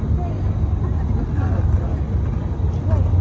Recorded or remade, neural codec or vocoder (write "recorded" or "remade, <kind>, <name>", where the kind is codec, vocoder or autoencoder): recorded